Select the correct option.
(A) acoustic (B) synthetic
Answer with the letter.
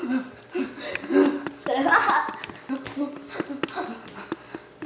A